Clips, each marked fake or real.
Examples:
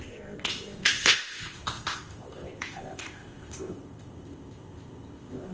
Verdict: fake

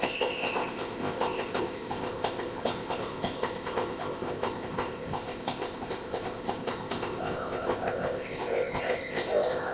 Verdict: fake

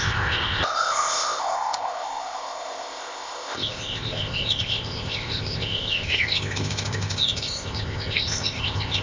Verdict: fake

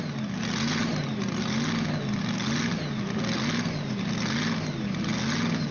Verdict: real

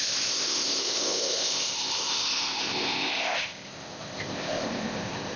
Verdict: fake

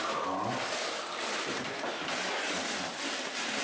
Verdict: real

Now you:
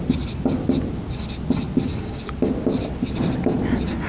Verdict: real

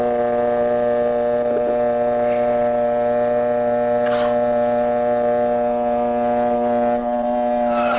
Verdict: real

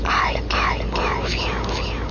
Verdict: real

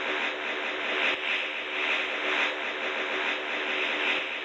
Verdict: real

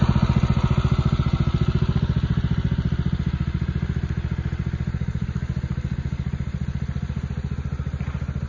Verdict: real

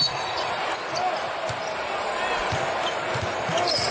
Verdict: real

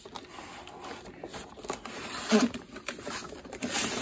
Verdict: real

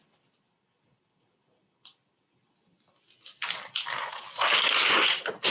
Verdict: real